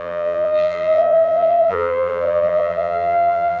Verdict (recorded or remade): remade